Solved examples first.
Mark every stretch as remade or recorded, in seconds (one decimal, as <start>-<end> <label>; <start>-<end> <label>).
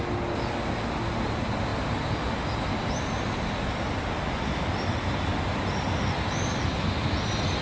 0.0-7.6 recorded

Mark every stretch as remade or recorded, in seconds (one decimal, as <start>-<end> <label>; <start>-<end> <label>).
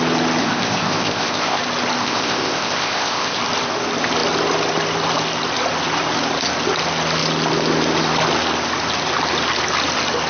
0.0-0.4 recorded; 0.4-1.6 remade; 1.6-2.0 recorded; 2.0-3.4 remade; 3.4-10.3 recorded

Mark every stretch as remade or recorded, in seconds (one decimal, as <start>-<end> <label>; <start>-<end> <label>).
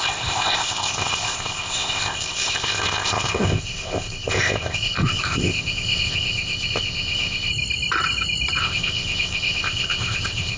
0.0-7.5 remade; 7.5-8.6 recorded; 8.6-10.6 remade